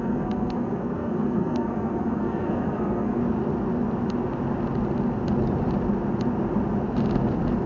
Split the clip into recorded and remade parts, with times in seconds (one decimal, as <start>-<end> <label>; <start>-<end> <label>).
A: 0.0-3.2 remade; 3.2-7.7 recorded